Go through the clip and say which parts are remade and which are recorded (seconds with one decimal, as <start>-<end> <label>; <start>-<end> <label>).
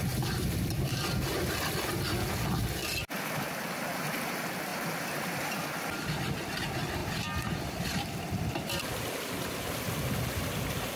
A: 0.0-4.7 recorded; 4.7-6.2 remade; 6.2-7.0 recorded; 7.0-10.6 remade; 10.6-11.0 recorded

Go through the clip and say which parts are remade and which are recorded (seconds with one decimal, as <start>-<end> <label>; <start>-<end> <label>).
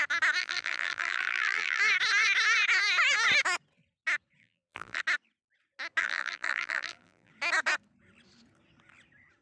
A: 0.0-0.4 recorded; 0.4-1.8 remade; 1.8-4.4 recorded; 4.4-5.0 remade; 5.0-6.0 recorded; 6.0-7.3 remade; 7.3-9.4 recorded